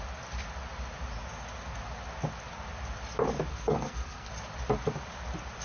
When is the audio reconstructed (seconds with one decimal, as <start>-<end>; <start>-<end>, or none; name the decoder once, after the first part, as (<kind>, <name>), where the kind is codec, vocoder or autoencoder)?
3.5-4.3 (codec, SNAC)